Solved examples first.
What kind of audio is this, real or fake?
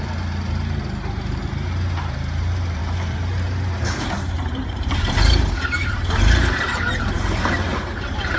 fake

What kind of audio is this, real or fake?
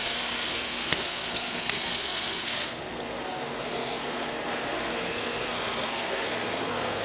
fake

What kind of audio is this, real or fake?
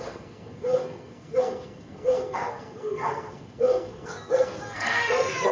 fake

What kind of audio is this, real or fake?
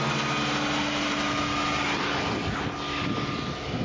real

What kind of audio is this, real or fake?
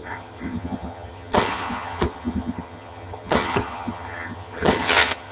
fake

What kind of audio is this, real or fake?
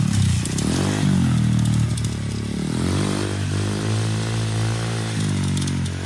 real